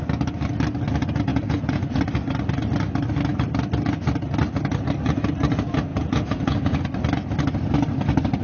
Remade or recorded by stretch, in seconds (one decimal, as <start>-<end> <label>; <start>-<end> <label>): 0.0-1.3 recorded; 1.3-2.0 remade; 2.0-5.9 recorded; 5.9-6.8 remade; 6.8-8.4 recorded